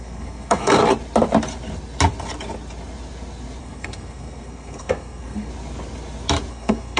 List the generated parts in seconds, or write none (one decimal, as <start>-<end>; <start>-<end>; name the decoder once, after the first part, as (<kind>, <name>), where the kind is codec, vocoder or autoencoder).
0.0-0.8 (codec, SNAC); 3.6-5.5; 6.5-7.0